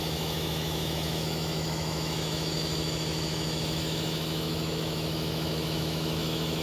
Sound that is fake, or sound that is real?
fake